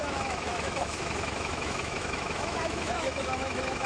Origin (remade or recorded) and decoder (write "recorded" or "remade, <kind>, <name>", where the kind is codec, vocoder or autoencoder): remade, autoencoder, DAC-VAE